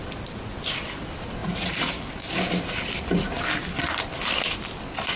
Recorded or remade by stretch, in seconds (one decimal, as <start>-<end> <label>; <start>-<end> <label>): 0.0-1.4 recorded; 1.4-2.1 remade; 2.1-5.2 recorded